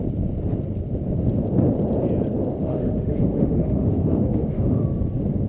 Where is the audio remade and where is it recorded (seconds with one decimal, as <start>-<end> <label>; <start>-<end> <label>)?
0.0-2.6 recorded; 2.6-4.8 remade; 4.8-5.5 recorded